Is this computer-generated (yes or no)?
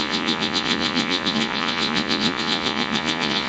yes